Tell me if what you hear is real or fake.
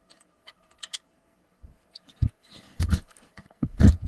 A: fake